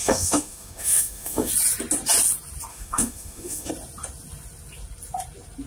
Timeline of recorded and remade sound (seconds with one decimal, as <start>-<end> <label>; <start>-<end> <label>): 0.0-1.5 remade; 1.5-2.7 recorded; 2.7-3.7 remade; 3.7-5.7 recorded

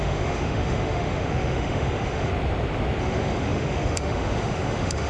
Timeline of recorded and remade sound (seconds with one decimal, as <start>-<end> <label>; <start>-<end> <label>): 0.0-2.3 remade; 2.3-3.0 recorded; 3.0-5.1 remade

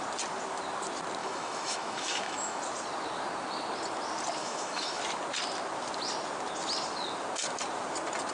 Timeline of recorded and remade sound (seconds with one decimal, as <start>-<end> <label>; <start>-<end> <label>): 0.0-1.2 recorded; 1.2-2.6 remade; 2.6-4.4 recorded; 4.4-5.0 remade; 5.0-8.3 recorded